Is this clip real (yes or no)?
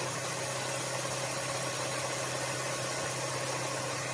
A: yes